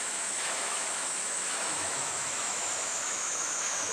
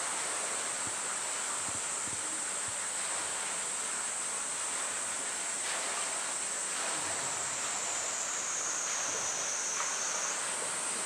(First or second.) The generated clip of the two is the first